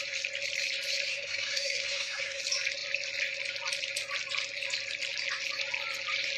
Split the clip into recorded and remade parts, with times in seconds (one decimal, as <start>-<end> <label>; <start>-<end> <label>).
0.0-1.1 recorded; 1.1-2.4 remade; 2.4-6.4 recorded